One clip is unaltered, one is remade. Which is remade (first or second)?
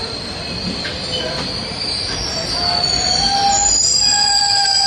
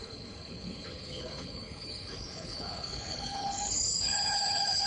second